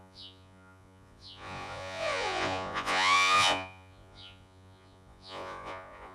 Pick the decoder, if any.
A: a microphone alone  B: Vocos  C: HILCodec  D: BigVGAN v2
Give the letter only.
B